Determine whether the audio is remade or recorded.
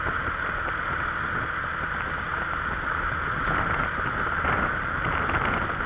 recorded